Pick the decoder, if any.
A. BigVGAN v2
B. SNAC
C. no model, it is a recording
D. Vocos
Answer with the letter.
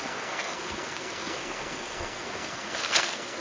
B